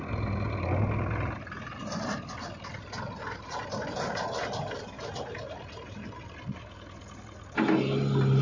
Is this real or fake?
real